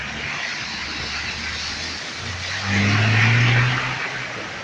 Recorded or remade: recorded